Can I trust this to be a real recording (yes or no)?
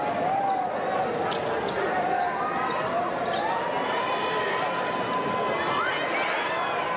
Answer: yes